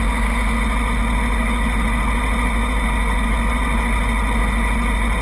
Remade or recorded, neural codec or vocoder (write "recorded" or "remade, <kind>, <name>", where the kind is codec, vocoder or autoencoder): recorded